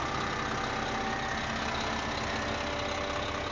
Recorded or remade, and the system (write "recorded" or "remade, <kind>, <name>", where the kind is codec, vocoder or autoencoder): recorded